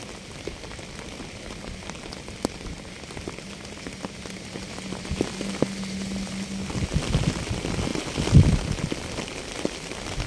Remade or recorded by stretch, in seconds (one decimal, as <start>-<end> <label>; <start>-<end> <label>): 0.0-10.3 recorded